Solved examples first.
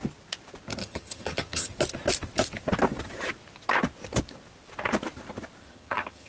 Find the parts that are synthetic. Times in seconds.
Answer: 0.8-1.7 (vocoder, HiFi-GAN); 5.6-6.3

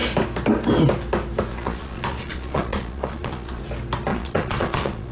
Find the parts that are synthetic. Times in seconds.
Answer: 1.5-3.6 (vocoder, Vocos); 4.1-5.1

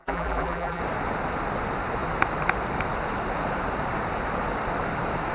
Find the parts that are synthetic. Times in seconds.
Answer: 0.0-0.8 (vocoder, BigVGAN v2)

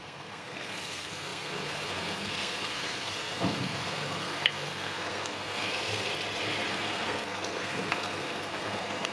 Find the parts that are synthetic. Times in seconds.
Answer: 0.0-6.1 (codec, SNAC); 6.7-9.1